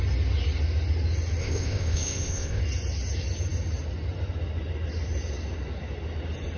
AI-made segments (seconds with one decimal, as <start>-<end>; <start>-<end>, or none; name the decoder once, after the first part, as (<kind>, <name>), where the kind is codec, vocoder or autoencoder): 1.4-2.6 (codec, ZipCodec)